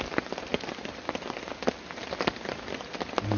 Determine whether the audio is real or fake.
real